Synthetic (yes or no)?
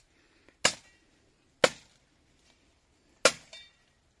no